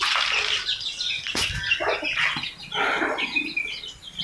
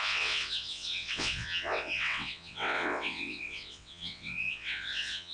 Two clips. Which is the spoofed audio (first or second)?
second